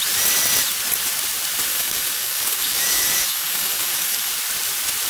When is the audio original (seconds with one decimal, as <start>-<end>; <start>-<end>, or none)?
0.0-1.7; 4.3-5.1